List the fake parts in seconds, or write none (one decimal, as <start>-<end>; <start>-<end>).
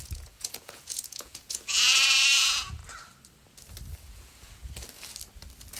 0.0-2.8; 4.0-4.6